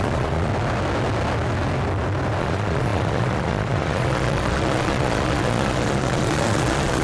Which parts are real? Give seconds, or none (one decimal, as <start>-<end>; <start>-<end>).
0.5-2.4